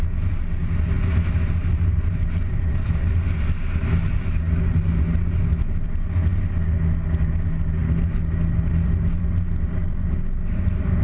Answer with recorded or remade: recorded